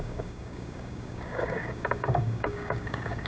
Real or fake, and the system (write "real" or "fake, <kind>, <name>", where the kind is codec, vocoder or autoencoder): fake, codec, DAC